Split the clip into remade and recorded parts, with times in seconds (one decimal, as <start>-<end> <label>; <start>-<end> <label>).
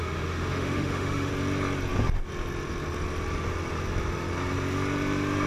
0.0-1.3 remade; 1.3-5.5 recorded